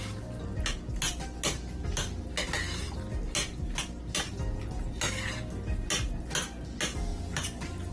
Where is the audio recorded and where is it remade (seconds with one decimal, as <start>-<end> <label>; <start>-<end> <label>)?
0.0-7.9 recorded